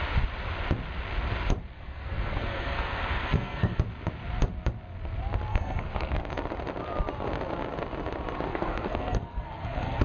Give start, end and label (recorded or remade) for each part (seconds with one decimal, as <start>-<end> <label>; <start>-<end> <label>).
0.0-1.7 recorded; 1.7-3.8 remade; 3.8-5.5 recorded; 5.5-6.3 remade; 6.3-8.5 recorded; 8.5-10.0 remade